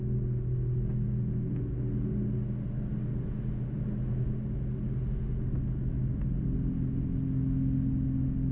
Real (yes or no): yes